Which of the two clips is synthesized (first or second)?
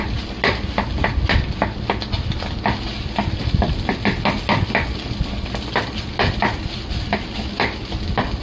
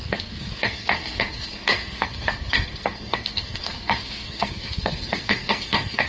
second